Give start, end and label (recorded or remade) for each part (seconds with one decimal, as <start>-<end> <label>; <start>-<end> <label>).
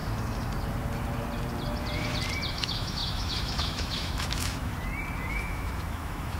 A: 0.0-2.5 recorded; 2.5-4.7 remade; 4.7-5.3 recorded; 5.3-6.4 remade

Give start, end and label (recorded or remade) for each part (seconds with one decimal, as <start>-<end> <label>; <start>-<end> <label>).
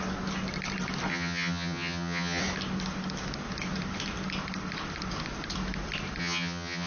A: 0.0-1.1 recorded; 1.1-2.4 remade; 2.4-6.2 recorded; 6.2-6.9 remade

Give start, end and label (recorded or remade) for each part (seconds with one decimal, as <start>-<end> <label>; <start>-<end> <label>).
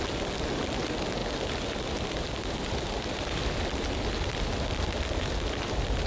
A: 0.0-6.1 recorded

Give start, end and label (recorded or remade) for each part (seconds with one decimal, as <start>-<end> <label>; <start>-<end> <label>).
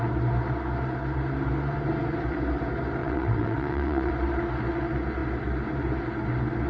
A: 0.0-3.0 recorded; 3.0-4.1 remade; 4.1-6.7 recorded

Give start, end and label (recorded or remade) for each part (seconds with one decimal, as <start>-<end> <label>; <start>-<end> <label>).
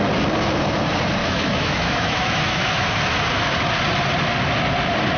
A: 0.0-1.2 recorded; 1.2-2.9 remade; 2.9-5.2 recorded